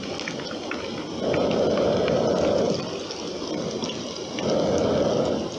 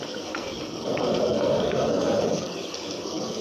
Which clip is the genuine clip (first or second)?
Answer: first